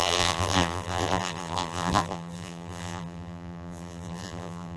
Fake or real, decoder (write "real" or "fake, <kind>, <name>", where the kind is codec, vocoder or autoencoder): fake, vocoder, BigVGAN v2